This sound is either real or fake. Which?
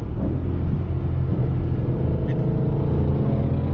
real